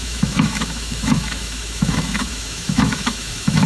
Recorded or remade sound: remade